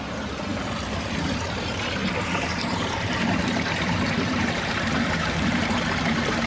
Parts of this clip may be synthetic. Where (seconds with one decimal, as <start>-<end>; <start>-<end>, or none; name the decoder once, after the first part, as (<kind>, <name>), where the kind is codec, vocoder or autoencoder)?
0.0-0.5 (vocoder, BigVGAN v2); 1.2-6.5